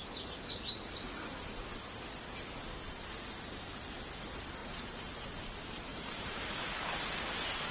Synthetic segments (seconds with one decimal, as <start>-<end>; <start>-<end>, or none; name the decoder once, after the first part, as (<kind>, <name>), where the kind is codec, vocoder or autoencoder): 4.6-5.4 (vocoder, Vocos); 5.9-7.7